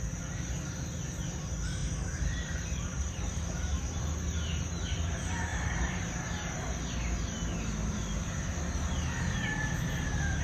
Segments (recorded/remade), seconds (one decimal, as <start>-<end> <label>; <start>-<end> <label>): 0.0-1.8 recorded; 1.8-4.0 remade; 4.0-5.5 recorded; 5.5-6.7 remade; 6.7-10.4 recorded